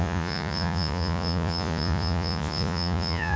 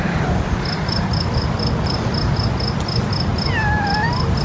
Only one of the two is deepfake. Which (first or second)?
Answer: first